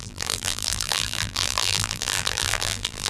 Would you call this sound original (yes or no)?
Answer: no